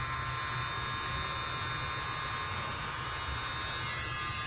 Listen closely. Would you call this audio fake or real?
real